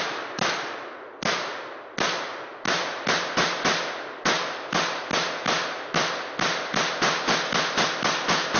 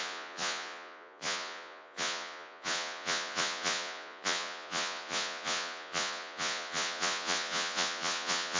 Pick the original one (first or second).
first